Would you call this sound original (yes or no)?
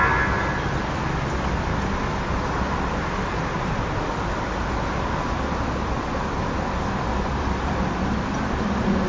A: yes